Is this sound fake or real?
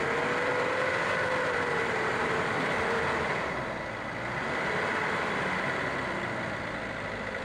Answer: fake